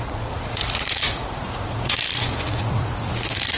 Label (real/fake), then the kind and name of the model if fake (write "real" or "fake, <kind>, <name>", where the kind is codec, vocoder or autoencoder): fake, vocoder, Vocos